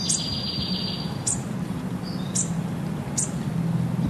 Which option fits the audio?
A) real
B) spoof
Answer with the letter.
A